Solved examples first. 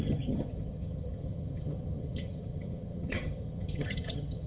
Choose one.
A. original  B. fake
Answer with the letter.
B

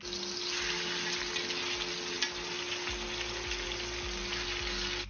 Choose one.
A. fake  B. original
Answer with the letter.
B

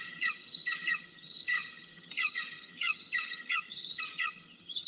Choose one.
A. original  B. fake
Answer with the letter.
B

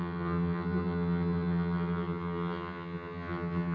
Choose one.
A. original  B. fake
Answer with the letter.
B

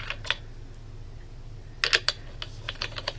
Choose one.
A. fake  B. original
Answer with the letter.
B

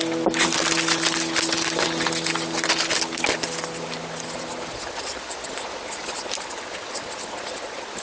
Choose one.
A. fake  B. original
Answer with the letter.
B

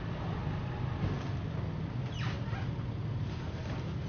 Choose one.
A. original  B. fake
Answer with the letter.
A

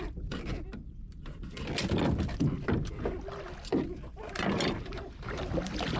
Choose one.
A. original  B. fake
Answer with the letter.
A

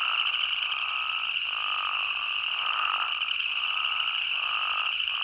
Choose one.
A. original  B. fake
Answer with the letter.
A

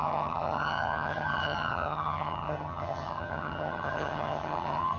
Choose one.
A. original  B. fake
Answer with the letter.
B